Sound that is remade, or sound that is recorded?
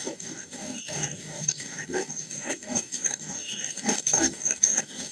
remade